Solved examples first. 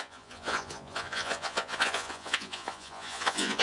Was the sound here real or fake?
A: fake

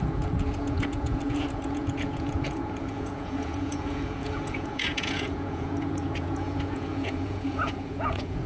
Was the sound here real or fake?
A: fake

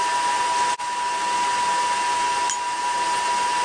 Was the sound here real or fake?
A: real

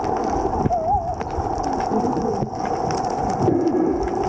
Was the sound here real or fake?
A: real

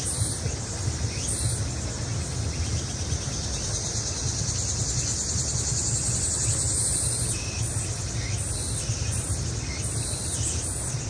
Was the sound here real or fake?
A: real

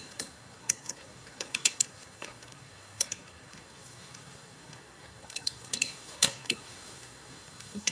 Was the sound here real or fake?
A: fake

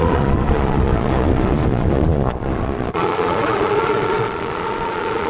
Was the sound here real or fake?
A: fake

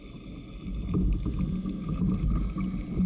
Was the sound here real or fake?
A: real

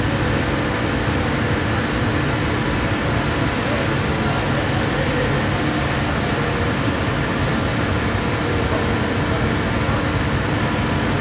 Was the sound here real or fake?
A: real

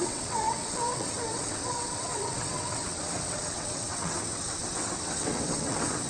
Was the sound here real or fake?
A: fake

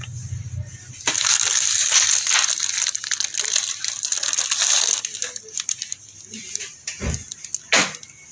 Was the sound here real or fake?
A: real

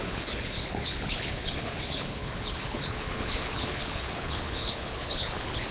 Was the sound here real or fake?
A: fake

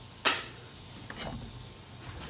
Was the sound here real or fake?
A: real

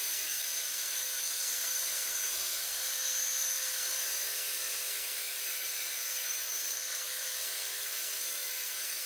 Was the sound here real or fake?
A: fake